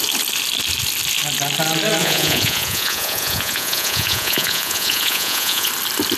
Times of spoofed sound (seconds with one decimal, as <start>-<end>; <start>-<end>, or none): 2.0-5.7